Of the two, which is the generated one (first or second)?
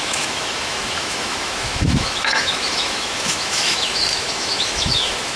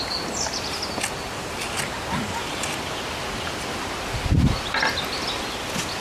first